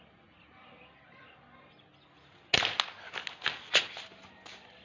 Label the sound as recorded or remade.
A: recorded